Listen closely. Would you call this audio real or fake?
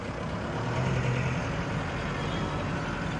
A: real